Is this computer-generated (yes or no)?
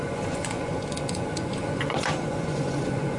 yes